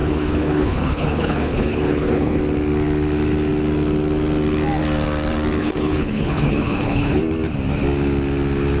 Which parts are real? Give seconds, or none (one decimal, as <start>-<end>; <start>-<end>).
2.4-5.6; 7.2-8.8